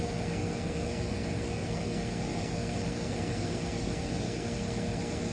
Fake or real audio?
fake